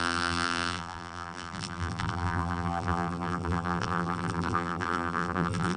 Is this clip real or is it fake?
fake